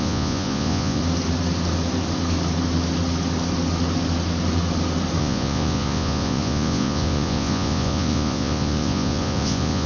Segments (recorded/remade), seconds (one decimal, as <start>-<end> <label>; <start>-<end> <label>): 0.0-1.0 remade; 1.0-5.2 recorded; 5.2-9.9 remade